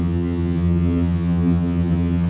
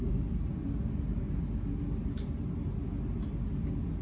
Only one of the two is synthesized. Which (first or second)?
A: first